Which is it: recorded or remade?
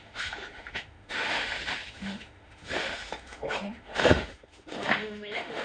remade